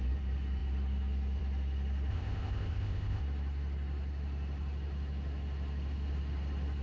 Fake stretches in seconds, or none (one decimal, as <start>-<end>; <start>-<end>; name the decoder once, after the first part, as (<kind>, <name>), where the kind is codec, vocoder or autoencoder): 2.1-3.2 (codec, ZipCodec)